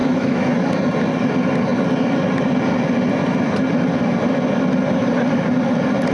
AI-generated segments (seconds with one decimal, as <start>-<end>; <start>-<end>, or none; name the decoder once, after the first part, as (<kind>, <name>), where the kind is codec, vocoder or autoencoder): 0.0-0.5 (autoencoder, DAC-VAE)